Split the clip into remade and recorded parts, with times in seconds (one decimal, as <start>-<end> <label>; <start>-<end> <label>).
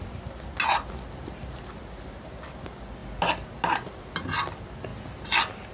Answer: 0.0-5.7 recorded